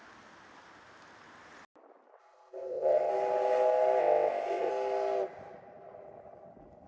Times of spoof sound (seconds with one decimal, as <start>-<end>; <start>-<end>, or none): 2.2-3.1; 4.0-4.7